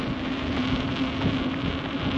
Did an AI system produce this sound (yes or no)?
no